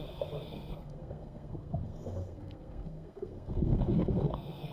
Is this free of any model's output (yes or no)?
no